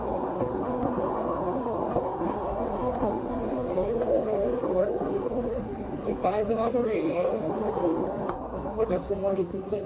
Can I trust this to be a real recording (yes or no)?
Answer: no